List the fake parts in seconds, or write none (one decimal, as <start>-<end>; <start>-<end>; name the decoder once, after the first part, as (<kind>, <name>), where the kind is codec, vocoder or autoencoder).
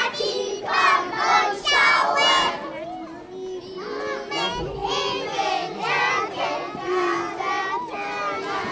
none